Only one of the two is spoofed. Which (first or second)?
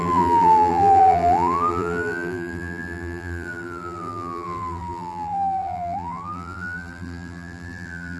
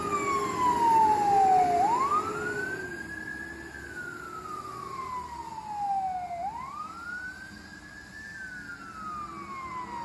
first